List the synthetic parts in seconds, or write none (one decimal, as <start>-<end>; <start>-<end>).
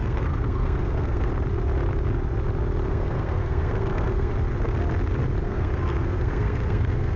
0.0-1.3; 2.9-4.3; 5.4-7.2